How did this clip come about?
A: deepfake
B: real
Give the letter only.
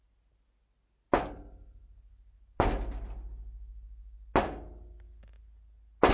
B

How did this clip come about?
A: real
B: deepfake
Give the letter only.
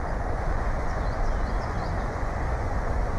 B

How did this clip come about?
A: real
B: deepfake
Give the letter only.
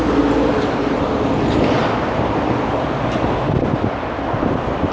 A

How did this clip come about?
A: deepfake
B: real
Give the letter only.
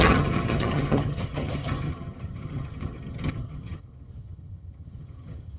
A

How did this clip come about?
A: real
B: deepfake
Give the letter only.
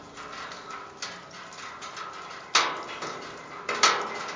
A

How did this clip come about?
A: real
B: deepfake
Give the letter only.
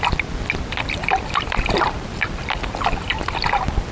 A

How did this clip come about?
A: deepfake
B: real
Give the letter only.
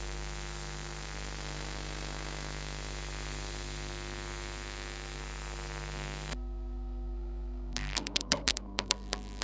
A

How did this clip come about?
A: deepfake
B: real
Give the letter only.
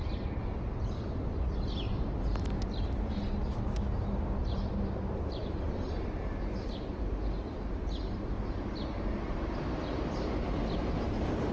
B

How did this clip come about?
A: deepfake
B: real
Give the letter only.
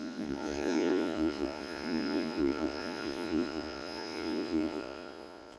A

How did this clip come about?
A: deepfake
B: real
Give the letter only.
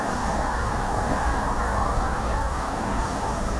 A